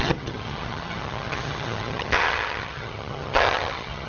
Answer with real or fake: fake